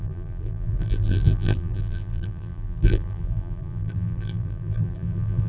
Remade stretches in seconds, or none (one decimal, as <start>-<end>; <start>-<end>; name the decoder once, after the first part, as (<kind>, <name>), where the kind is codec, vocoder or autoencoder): 0.0-5.5 (vocoder, BigVGAN v2)

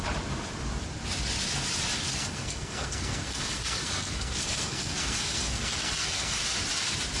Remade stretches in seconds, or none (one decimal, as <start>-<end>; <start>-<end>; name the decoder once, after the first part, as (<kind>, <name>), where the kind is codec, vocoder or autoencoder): 2.1-6.4 (codec, SNAC)

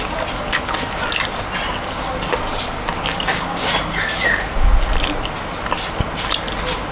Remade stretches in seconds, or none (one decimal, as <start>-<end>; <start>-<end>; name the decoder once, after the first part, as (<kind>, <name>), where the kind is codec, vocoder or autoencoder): 2.9-3.7 (codec, DAC)

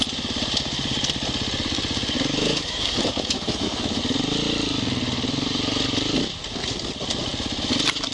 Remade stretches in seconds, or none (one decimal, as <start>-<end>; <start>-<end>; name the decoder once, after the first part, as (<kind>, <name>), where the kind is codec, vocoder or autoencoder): 2.4-4.0 (autoencoder, DAC-VAE)